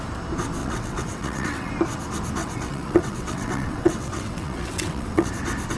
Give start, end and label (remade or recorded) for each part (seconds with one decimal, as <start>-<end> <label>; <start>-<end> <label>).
0.0-0.6 recorded; 0.6-1.7 remade; 1.7-2.4 recorded; 2.4-5.3 remade; 5.3-5.8 recorded